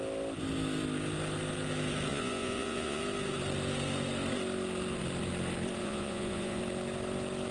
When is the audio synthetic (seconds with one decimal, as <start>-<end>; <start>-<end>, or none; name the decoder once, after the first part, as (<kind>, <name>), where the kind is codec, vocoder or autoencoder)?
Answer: 2.1-3.0 (vocoder, Vocos); 5.8-6.6